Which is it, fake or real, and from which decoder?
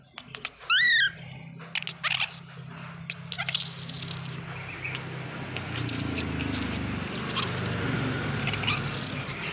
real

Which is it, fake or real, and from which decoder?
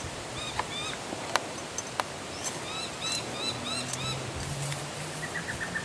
real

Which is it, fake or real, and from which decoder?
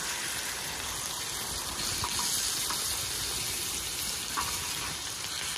real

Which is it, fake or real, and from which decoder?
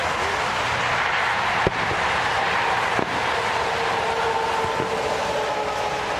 real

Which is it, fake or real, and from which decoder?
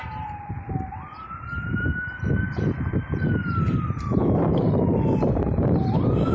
fake, vocoder, BigVGAN v2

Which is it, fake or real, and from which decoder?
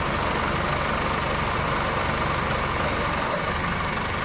real